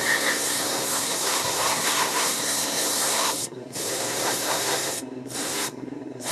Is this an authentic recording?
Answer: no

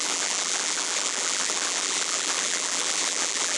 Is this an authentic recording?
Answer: no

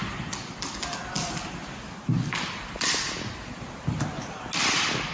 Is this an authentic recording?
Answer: yes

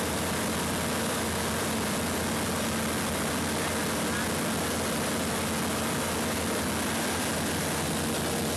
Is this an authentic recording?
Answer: yes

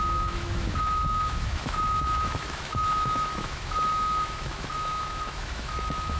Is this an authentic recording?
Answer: no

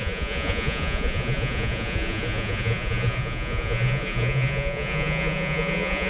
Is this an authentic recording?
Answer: no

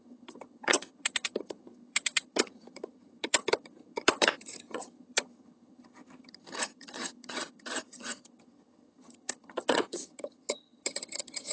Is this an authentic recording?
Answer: no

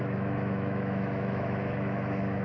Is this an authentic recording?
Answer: no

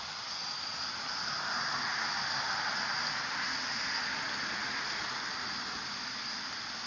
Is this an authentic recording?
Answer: yes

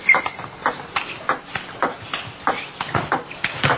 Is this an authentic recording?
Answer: yes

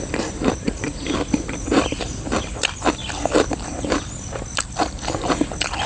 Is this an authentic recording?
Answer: yes